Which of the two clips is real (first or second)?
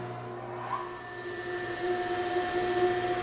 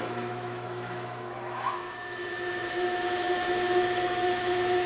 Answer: first